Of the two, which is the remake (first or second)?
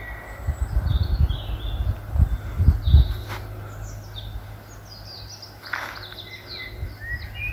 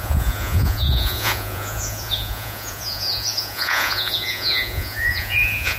second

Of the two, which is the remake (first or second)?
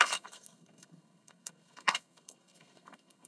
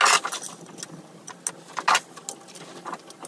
first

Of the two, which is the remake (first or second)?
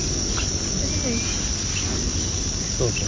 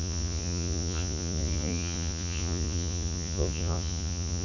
second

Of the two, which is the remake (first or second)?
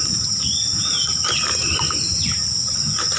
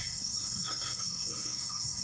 second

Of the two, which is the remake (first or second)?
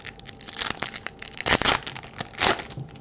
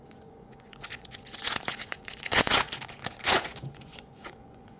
second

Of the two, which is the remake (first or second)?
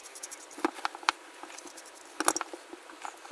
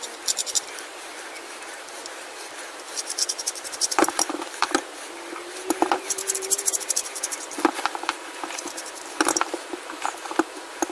second